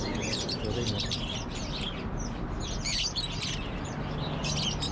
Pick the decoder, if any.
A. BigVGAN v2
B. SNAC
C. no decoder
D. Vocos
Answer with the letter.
C